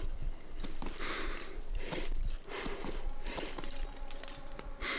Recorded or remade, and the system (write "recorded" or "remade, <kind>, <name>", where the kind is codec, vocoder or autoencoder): remade, vocoder, BigVGAN v2